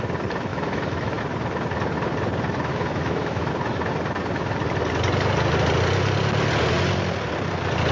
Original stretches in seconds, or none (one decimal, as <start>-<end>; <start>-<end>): 0.0-0.5; 1.2-2.7; 3.5-7.9